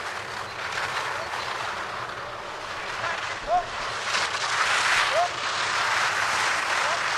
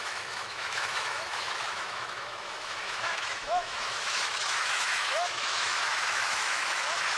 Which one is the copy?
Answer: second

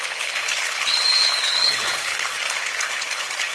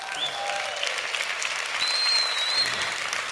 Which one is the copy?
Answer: first